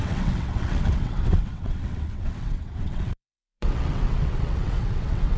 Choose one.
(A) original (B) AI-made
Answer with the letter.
B